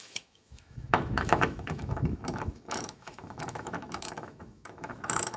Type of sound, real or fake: fake